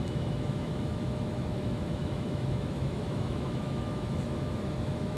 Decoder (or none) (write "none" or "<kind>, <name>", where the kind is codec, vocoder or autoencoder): autoencoder, DAC-VAE